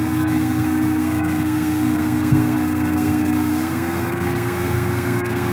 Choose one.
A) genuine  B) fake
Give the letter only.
B